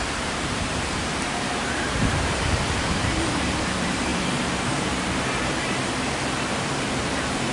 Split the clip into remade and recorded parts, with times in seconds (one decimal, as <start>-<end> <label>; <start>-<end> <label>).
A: 0.0-7.5 remade